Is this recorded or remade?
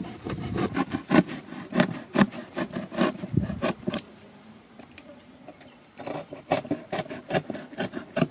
remade